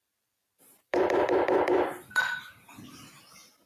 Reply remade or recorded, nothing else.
remade